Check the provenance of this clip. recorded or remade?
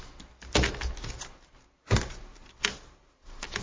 recorded